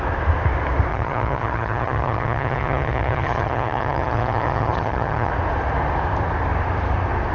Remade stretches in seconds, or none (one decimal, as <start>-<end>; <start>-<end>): 0.9-5.3